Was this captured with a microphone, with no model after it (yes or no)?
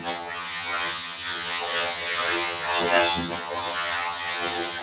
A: no